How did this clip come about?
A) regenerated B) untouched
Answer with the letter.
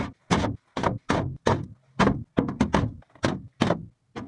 B